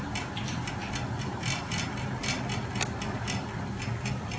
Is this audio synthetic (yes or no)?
no